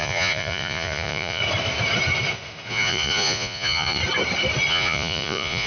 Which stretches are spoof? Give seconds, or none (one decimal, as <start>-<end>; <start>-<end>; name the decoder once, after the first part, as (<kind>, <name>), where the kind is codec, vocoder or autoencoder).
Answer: 0.0-1.4 (vocoder, Vocos); 2.7-4.0; 4.7-5.7